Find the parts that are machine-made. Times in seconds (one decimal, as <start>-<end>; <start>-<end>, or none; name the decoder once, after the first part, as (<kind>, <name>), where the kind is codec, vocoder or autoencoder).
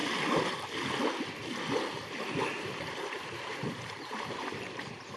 2.9-5.2 (vocoder, BigVGAN v2)